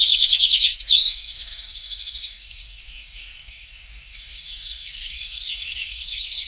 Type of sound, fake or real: fake